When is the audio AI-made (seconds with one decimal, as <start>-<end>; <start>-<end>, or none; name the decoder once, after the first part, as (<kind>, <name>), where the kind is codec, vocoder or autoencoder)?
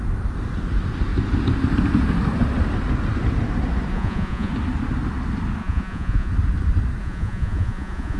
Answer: 3.9-4.5 (vocoder, Vocos); 5.6-6.3; 7.0-8.2